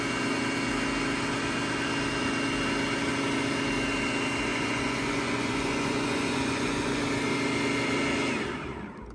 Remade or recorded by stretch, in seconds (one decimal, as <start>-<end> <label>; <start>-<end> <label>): 0.0-4.5 recorded; 4.5-7.0 remade; 7.0-9.1 recorded